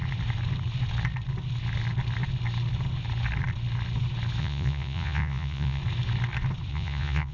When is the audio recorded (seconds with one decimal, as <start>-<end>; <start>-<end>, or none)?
0.0-4.4; 5.8-6.7